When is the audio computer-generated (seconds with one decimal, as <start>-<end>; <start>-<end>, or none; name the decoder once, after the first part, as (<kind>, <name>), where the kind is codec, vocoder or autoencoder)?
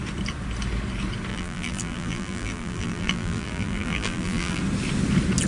1.3-4.6 (vocoder, BigVGAN v2)